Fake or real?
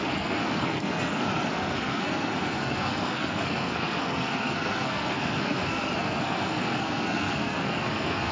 fake